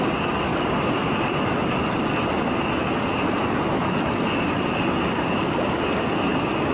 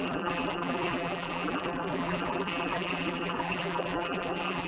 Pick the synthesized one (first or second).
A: second